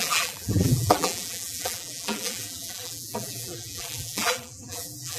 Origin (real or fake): fake